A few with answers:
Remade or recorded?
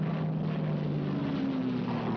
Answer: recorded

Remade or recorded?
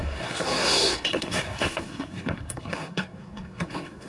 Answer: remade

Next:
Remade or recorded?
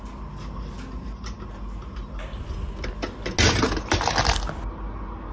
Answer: recorded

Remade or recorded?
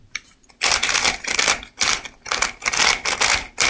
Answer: recorded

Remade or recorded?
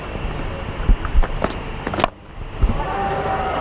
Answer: recorded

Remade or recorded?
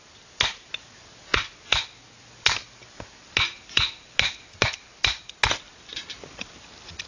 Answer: recorded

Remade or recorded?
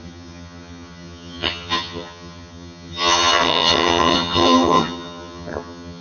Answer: remade